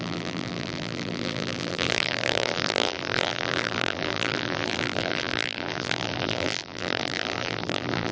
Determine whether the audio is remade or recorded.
remade